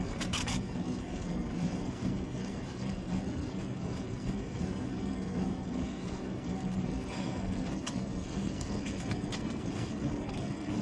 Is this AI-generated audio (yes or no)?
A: yes